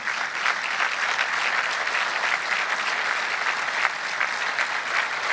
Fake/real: real